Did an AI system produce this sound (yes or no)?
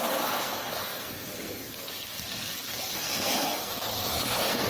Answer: yes